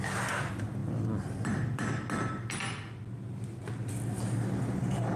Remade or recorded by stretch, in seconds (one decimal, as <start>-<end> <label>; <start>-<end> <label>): 0.0-5.2 recorded